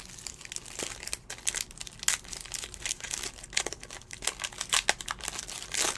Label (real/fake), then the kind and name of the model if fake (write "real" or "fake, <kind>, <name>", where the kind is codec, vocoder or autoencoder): real